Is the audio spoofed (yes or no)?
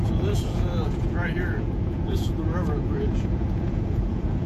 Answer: yes